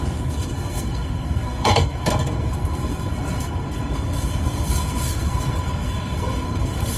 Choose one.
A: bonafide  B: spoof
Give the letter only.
B